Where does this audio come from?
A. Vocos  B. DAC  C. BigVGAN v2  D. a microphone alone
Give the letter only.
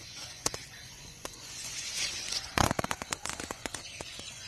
A